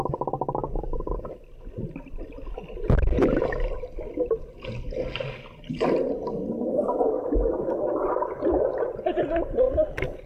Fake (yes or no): no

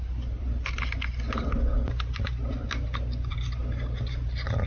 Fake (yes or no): yes